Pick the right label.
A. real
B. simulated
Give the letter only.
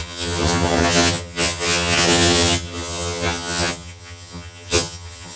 B